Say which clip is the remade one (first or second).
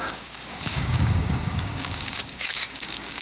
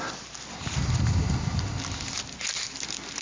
first